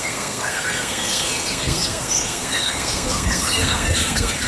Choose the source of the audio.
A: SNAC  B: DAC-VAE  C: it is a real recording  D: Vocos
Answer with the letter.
A